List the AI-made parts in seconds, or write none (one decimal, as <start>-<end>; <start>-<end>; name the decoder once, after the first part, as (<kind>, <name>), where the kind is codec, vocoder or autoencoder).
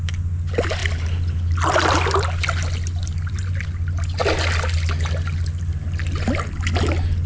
none